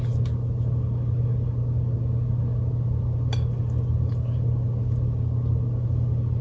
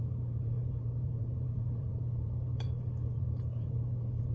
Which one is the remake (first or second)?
second